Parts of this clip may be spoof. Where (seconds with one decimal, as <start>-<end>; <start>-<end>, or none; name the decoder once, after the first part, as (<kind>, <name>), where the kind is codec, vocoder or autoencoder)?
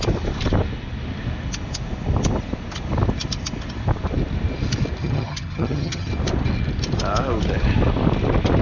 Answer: 5.0-6.1 (vocoder, HiFi-GAN)